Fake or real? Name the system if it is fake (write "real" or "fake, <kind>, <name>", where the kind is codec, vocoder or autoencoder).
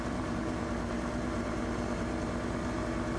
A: fake, vocoder, BigVGAN v2